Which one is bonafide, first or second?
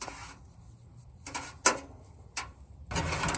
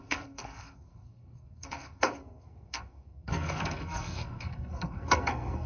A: first